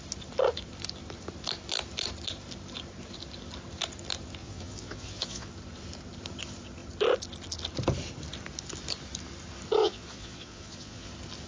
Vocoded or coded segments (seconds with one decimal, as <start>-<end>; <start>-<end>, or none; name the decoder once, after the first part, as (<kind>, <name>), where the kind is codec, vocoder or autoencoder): 4.4-5.5 (vocoder, Vocos); 9.8-11.1